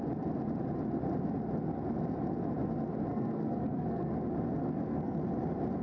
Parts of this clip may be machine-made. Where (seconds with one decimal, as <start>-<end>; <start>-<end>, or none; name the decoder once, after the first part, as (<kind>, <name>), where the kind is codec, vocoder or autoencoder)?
3.1-4.1 (codec, SNAC); 4.6-5.2